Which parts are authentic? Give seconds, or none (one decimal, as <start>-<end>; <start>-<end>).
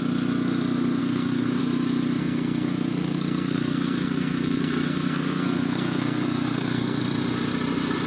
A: 0.0-1.0; 1.6-2.2; 7.0-8.1